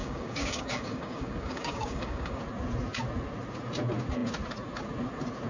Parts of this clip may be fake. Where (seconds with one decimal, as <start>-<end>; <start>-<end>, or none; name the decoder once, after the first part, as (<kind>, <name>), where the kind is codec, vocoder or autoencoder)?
0.0-2.4 (codec, DAC)

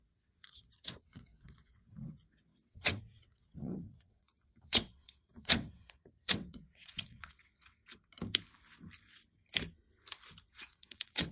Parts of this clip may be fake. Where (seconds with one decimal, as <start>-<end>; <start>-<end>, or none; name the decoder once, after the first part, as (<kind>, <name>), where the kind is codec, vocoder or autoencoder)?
0.0-7.8 (vocoder, WaveNeXt); 10.5-11.3

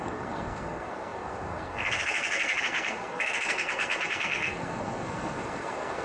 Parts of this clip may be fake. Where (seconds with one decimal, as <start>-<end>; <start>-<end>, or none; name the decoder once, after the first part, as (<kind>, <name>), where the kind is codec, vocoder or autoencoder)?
0.0-6.0 (codec, SNAC)

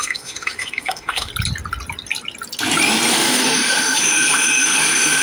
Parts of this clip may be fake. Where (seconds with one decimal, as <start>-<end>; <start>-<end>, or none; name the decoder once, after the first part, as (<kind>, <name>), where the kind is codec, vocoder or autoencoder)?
0.0-1.3 (autoencoder, DAC-VAE); 3.1-5.2

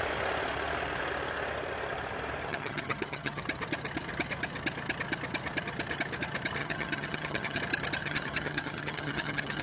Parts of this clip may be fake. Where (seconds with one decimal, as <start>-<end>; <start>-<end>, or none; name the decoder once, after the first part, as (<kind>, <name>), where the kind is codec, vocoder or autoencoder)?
2.5-3.4 (vocoder, HiFi-GAN); 6.6-7.6; 8.0-9.6

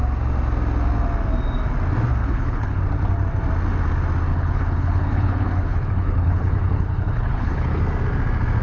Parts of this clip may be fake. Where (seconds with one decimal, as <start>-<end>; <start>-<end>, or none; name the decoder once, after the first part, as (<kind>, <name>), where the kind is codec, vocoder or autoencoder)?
2.2-2.8 (codec, HILCodec); 4.3-7.8